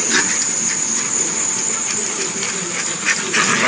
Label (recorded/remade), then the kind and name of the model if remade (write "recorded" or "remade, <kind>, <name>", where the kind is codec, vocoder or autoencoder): recorded